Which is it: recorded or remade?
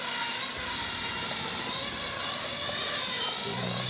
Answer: recorded